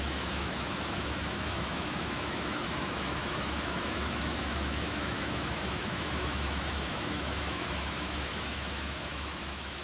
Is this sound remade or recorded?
remade